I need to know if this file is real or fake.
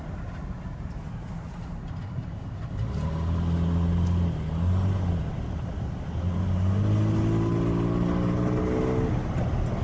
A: real